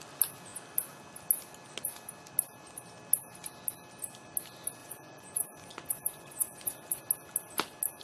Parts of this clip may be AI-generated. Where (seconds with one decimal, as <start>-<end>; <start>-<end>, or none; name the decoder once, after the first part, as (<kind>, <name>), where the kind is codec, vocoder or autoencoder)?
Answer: 4.8-7.0 (vocoder, Vocos)